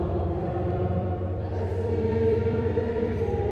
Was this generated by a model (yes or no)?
yes